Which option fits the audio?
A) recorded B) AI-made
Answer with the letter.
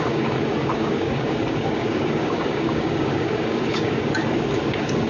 B